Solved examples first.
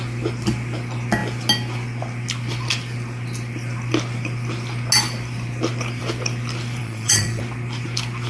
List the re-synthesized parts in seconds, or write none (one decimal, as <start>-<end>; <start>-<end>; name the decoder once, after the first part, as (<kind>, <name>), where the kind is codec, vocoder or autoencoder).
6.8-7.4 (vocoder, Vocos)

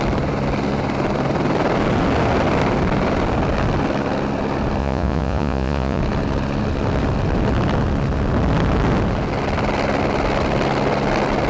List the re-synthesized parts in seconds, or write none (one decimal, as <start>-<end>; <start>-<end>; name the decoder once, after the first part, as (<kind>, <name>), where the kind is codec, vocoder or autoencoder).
4.8-6.0 (vocoder, Vocos)

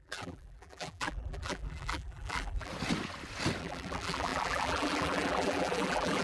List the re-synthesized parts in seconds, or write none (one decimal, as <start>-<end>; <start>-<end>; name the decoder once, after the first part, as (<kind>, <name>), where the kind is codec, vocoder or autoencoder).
0.0-2.7 (vocoder, BigVGAN v2); 3.6-6.2